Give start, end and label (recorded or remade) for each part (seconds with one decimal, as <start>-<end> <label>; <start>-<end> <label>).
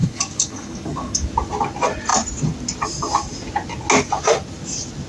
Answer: 0.0-1.3 remade; 1.3-5.1 recorded